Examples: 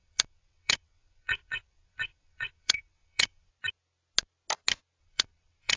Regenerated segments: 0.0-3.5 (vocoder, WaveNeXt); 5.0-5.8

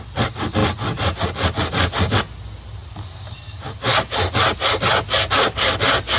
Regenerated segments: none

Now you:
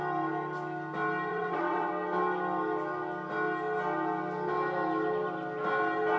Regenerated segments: 1.3-1.9 (vocoder, WaveNeXt)

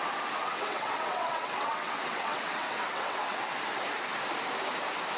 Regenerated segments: 0.4-3.5 (vocoder, WaveNeXt)

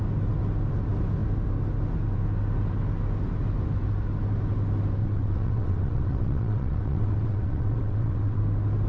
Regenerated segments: 5.0-8.4 (vocoder, WaveNeXt)

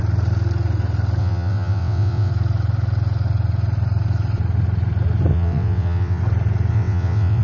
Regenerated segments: 1.2-2.3 (vocoder, WaveNeXt); 5.3-6.2; 6.7-7.4

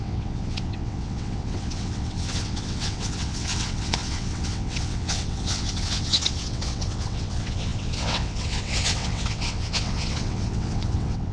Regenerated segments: 0.0-11.3 (vocoder, WaveNeXt)

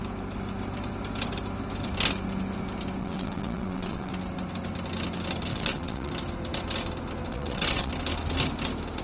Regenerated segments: 3.0-4.1 (vocoder, WaveNeXt); 5.5-6.1; 7.3-7.9